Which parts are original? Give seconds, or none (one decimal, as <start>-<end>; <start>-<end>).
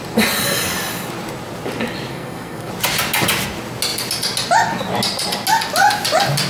0.0-2.1; 2.7-6.5